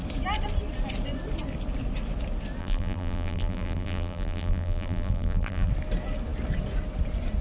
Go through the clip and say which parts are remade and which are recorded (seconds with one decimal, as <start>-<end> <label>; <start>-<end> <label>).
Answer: 0.0-2.6 recorded; 2.6-5.7 remade; 5.7-7.4 recorded